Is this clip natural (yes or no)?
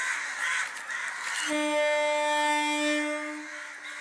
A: yes